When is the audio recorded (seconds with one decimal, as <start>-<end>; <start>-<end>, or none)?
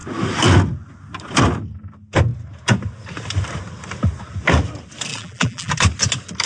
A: 0.0-5.1; 5.7-6.5